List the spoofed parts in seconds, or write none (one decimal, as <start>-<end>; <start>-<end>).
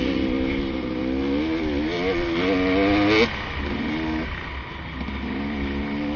none